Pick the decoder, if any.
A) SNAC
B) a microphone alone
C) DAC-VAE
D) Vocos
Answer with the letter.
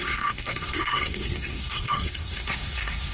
A